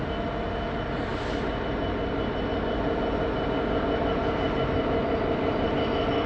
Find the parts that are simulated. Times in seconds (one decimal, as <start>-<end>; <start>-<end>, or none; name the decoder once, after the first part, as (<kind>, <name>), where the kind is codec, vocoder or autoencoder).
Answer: none